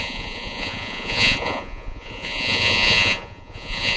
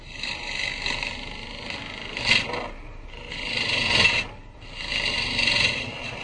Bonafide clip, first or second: second